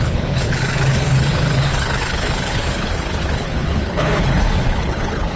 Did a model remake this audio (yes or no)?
yes